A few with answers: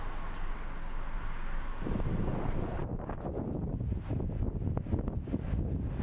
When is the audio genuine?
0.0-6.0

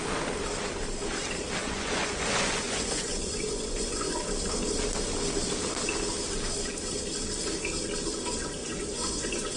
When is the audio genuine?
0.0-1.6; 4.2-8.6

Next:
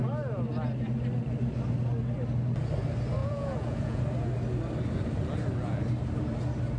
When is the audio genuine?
0.0-3.2; 4.0-6.8